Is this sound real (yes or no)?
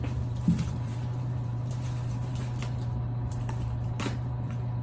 no